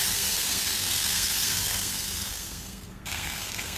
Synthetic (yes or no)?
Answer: yes